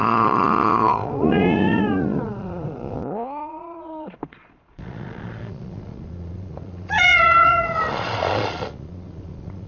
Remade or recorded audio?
remade